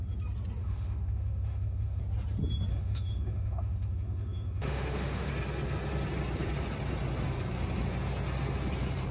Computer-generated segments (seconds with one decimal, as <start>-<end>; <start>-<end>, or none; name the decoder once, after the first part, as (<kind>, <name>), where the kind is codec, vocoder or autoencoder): 0.6-2.0 (autoencoder, DAC-VAE); 2.7-5.3